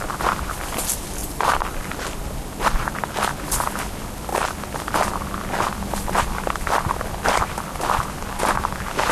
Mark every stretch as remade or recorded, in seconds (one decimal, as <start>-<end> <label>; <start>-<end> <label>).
0.0-1.2 recorded; 1.2-3.2 remade; 3.2-9.1 recorded